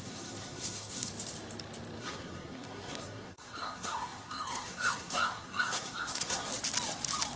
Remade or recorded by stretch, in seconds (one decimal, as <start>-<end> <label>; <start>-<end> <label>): 0.0-1.1 remade; 1.1-2.0 recorded; 2.0-6.5 remade; 6.5-7.4 recorded